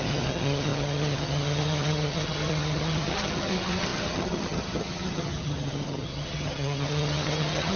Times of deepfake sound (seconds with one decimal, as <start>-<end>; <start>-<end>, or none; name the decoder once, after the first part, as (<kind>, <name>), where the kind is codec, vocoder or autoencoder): 0.0-7.8 (vocoder, HiFi-GAN)